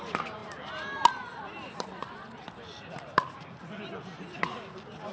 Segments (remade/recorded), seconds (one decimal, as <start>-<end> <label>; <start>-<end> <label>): 0.0-0.4 recorded; 0.4-3.5 remade; 3.5-5.1 recorded